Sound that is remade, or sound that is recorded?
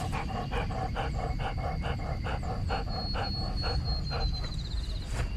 recorded